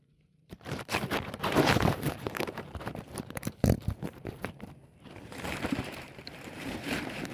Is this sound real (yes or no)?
no